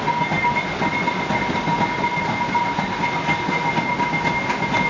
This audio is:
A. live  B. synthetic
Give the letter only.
A